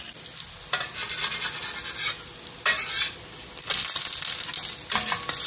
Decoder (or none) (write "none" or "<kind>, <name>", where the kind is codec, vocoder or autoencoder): none